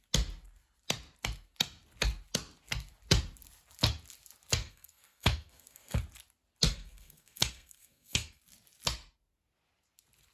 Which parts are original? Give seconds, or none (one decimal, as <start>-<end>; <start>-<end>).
0.0-4.6; 6.0-6.7; 8.4-10.3